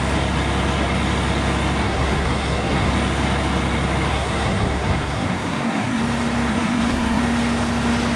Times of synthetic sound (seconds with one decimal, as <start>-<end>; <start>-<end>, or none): 1.8-2.9; 4.1-6.0; 6.5-7.2